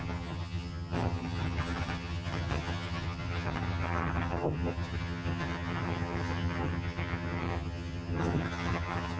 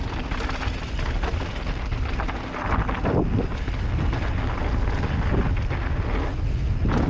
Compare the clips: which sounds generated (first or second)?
first